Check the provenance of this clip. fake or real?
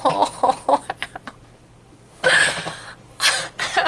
real